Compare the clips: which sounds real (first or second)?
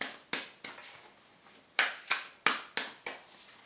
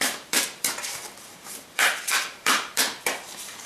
first